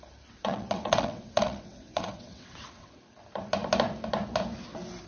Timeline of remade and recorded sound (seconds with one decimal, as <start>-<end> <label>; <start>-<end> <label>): 0.0-0.4 recorded; 0.4-3.0 remade; 3.0-5.1 recorded